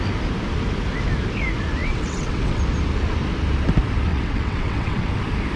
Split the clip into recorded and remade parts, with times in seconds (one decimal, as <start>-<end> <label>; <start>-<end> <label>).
0.0-1.8 recorded; 1.8-2.6 remade; 2.6-4.1 recorded; 4.1-5.1 remade; 5.1-5.6 recorded